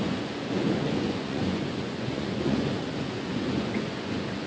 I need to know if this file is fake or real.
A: fake